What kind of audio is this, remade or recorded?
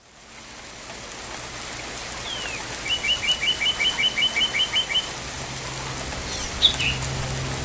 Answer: recorded